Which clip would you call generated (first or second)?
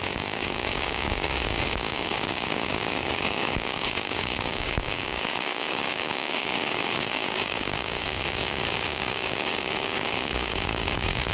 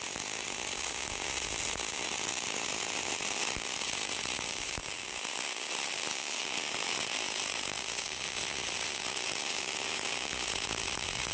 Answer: first